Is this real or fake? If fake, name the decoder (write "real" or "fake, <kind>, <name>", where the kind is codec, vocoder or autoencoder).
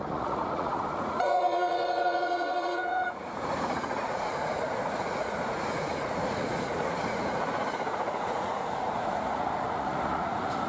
fake, vocoder, Vocos